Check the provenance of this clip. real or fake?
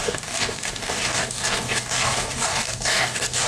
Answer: fake